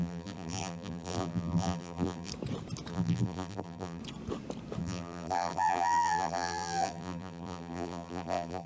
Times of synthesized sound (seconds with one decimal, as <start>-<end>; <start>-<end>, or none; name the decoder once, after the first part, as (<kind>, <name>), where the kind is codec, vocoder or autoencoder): 0.0-2.3 (vocoder, BigVGAN v2); 2.9-4.0; 4.8-8.7